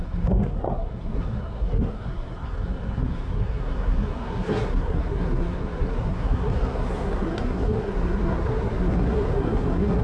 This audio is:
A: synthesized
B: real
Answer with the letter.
A